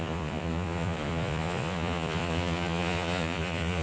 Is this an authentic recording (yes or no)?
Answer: no